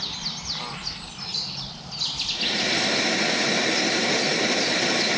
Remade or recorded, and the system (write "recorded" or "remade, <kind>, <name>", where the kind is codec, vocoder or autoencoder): recorded